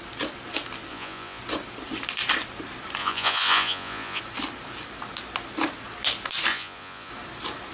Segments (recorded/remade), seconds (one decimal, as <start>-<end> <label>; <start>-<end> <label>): 0.0-0.9 recorded; 0.9-1.4 remade; 1.4-3.0 recorded; 3.0-4.2 remade; 4.2-6.5 recorded; 6.5-7.1 remade; 7.1-7.7 recorded